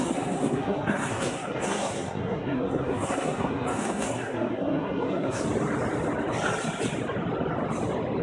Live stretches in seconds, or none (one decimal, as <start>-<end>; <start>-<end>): 5.4-8.2